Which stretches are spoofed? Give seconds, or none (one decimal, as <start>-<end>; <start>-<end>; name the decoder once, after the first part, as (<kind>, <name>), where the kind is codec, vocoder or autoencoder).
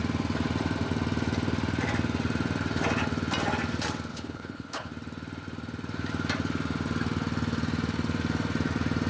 4.1-4.9 (codec, HILCodec)